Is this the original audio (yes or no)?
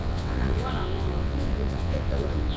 no